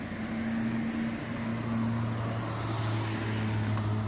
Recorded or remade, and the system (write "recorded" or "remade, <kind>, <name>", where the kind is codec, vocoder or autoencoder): recorded